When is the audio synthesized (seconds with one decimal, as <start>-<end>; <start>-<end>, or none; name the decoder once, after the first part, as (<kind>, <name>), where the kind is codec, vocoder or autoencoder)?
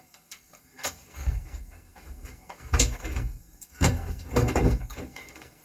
0.0-5.6 (codec, SNAC)